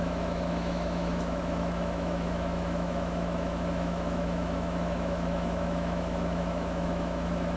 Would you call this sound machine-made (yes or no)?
yes